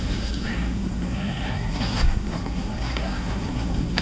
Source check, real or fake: fake